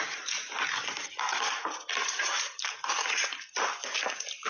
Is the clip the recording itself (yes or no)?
yes